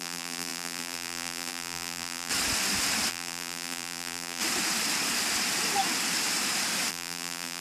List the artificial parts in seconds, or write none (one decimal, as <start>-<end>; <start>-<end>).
0.0-2.3; 3.1-4.4; 6.9-7.6